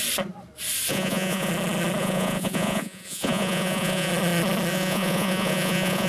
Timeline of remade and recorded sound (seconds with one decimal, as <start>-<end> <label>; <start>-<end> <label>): 0.0-0.9 recorded; 0.9-1.5 remade; 1.5-2.0 recorded; 2.0-4.1 remade; 4.1-4.7 recorded; 4.7-6.1 remade